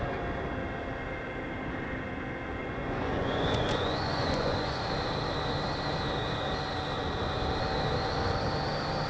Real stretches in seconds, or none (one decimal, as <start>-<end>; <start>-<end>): 0.0-2.6; 4.8-9.1